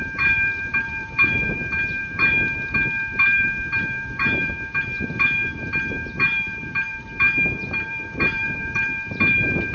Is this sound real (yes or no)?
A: no